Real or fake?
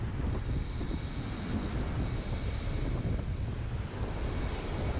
real